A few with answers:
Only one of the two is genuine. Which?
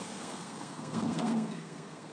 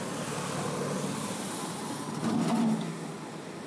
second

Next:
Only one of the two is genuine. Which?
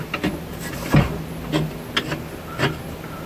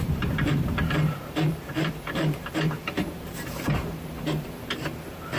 first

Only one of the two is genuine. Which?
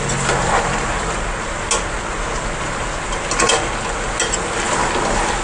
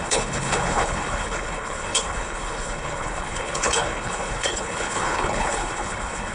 first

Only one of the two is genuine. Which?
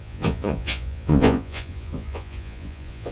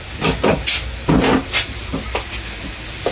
second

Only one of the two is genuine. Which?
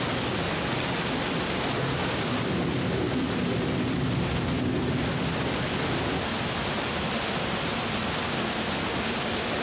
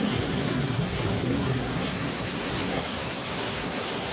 first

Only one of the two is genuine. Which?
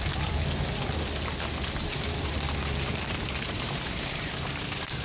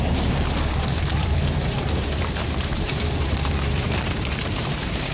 first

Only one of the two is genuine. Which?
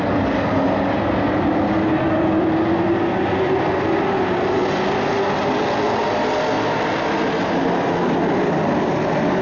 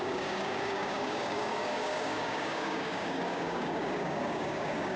first